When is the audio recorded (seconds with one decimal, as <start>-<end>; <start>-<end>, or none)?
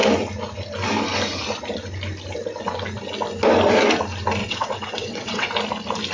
0.0-4.4; 5.5-6.1